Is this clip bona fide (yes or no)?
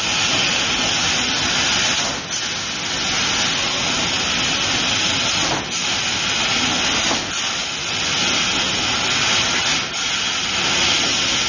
yes